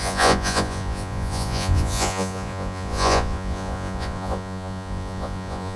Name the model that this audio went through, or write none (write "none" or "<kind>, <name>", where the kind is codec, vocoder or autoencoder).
vocoder, Vocos